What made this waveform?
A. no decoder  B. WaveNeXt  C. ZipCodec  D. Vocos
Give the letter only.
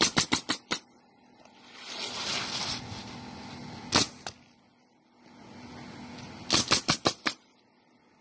A